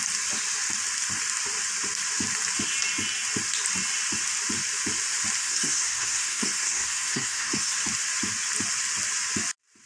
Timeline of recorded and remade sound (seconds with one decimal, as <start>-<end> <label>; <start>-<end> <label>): 0.0-5.4 recorded; 5.4-7.7 remade; 7.7-9.9 recorded

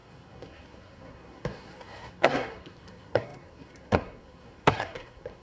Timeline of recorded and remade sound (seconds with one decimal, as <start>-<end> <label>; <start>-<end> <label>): 0.0-5.4 remade